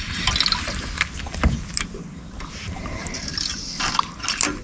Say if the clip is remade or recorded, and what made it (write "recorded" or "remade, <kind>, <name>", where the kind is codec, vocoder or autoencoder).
recorded